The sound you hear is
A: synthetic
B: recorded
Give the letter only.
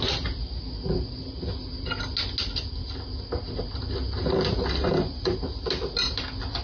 B